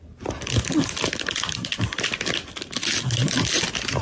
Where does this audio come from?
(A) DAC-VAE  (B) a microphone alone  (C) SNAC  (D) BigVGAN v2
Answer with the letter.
B